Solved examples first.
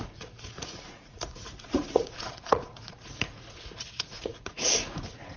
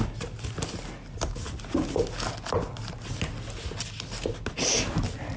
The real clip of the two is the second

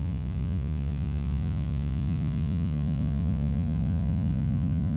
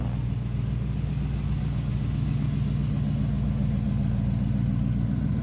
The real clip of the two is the second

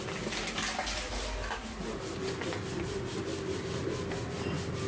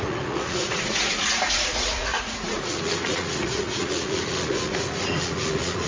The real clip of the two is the first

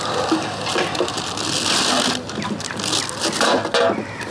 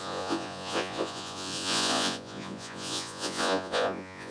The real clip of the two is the first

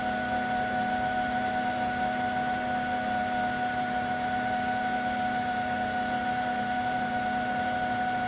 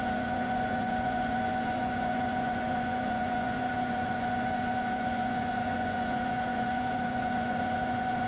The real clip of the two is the first